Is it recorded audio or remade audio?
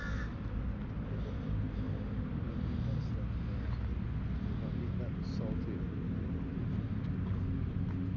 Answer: recorded